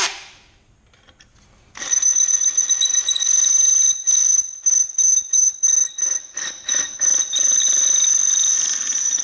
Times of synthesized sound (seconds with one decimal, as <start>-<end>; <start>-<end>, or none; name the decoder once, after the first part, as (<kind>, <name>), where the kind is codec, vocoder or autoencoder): none